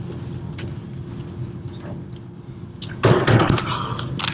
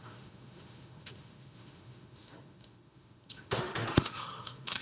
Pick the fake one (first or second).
second